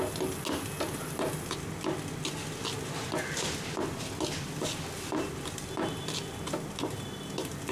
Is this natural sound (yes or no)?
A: yes